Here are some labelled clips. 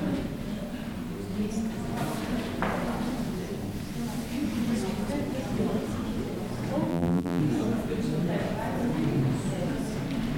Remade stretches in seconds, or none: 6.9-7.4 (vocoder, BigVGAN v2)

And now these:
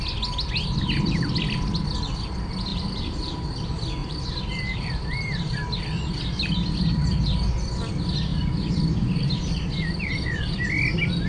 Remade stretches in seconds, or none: 2.7-3.6 (vocoder, BigVGAN v2); 4.0-5.8; 8.3-10.1

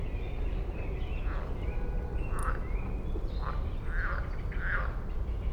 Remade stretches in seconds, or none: 2.4-3.8 (vocoder, BigVGAN v2); 4.2-4.8

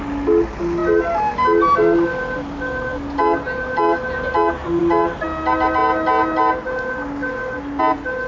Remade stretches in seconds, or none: none

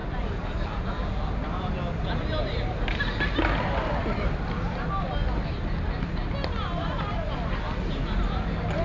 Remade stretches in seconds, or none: 4.0-4.8 (vocoder, BigVGAN v2)